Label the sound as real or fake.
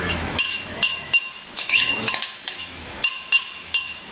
fake